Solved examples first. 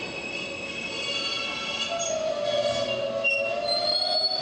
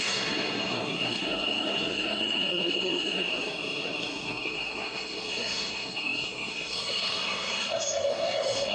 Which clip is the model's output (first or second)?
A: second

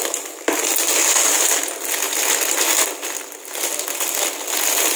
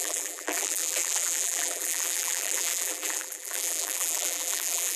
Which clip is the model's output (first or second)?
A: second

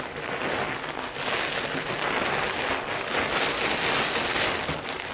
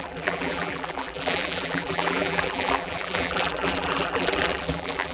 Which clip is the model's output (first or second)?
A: second